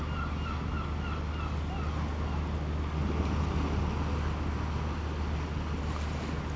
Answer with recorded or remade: recorded